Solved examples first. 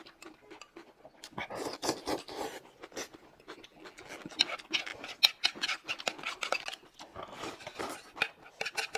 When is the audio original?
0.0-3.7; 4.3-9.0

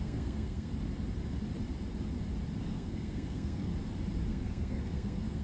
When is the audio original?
0.7-2.6; 3.7-4.3

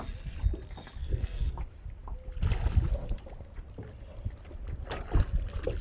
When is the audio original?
0.0-1.0; 1.6-5.8

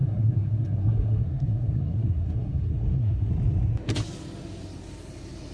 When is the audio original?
3.3-5.5